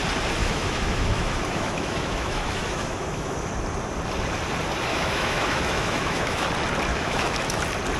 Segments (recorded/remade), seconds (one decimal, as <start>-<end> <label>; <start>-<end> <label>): 0.0-0.4 recorded; 0.4-3.5 remade; 3.5-4.9 recorded; 4.9-6.5 remade; 6.5-6.9 recorded; 6.9-7.6 remade; 7.6-8.0 recorded